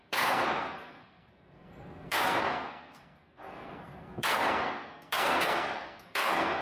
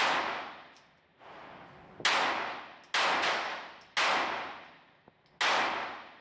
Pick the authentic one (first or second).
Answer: second